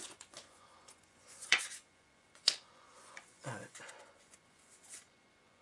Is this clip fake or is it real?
fake